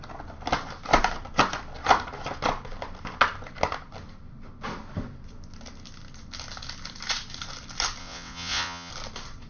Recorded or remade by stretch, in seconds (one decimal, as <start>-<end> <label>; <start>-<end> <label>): 0.0-8.0 recorded; 8.0-8.9 remade; 8.9-9.5 recorded

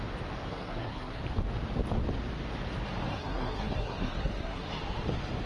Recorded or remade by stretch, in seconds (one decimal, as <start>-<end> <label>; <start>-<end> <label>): 0.0-0.5 recorded; 0.5-1.2 remade; 1.2-3.1 recorded; 3.1-4.7 remade; 4.7-5.5 recorded